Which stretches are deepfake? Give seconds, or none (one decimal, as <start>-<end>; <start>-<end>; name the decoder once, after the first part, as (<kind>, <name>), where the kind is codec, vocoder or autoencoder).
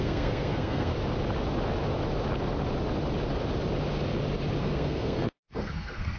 0.0-0.9 (codec, SNAC); 4.6-6.2